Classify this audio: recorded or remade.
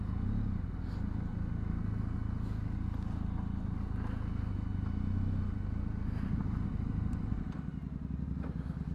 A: recorded